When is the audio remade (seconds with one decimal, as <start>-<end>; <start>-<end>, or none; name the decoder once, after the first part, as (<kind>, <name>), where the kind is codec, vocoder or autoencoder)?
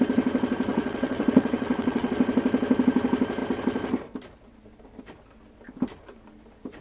0.7-2.1 (vocoder, WaveNeXt)